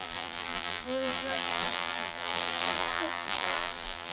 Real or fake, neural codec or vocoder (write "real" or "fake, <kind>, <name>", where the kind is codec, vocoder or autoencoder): fake, vocoder, BigVGAN v2